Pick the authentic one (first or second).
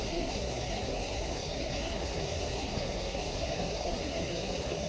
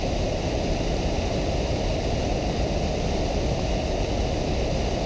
second